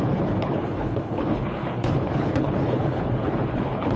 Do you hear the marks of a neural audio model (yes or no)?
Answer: yes